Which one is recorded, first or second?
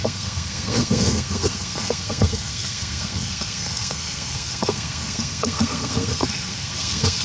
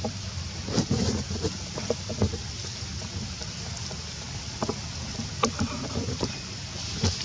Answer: second